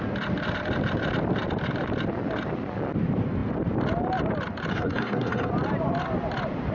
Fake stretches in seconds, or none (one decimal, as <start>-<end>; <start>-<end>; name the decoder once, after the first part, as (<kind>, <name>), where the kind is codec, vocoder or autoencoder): 4.7-5.5 (codec, SNAC)